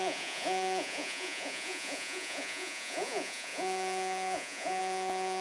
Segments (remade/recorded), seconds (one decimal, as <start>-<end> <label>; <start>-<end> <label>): 0.0-5.4 remade